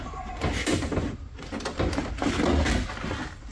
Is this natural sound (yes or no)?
yes